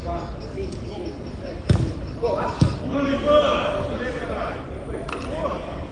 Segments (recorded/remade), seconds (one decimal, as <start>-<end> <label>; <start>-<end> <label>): 0.0-3.1 remade; 3.1-5.3 recorded; 5.3-5.9 remade